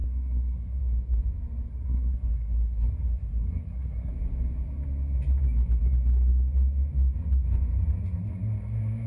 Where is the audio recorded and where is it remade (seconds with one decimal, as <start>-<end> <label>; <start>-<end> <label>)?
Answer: 0.0-0.8 remade; 0.8-1.7 recorded; 1.7-4.1 remade; 4.1-9.1 recorded